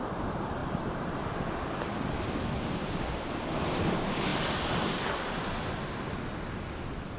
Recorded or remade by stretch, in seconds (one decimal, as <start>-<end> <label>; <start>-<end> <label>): 0.0-0.6 recorded; 0.6-3.1 remade; 3.1-7.2 recorded